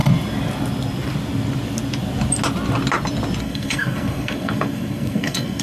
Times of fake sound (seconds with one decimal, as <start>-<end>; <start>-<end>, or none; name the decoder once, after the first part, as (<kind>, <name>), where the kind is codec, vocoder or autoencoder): 3.4-5.6 (codec, SNAC)